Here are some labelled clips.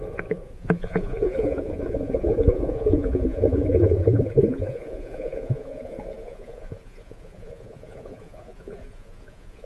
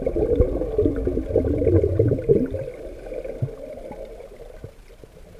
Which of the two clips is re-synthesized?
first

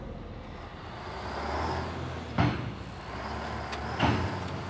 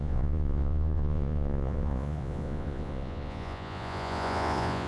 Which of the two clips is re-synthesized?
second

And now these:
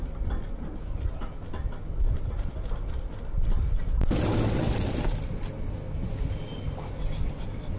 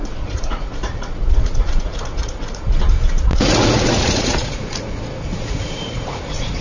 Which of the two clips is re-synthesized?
second